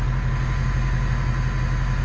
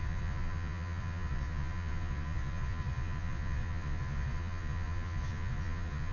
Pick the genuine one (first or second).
first